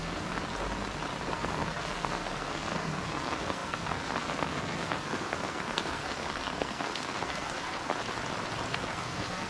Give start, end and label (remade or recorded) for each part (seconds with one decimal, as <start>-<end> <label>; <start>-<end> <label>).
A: 0.0-0.4 remade; 0.4-1.3 recorded; 1.3-7.9 remade; 7.9-8.7 recorded; 8.7-9.5 remade